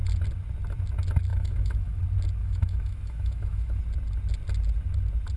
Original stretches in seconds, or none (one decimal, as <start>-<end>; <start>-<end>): 0.0-1.3; 2.0-2.4; 3.8-5.4